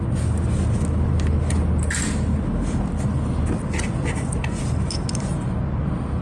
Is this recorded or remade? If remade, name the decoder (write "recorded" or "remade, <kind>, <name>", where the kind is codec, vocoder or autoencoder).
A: recorded